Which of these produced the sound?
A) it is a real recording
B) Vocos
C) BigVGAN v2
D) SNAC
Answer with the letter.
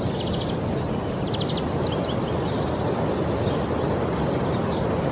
A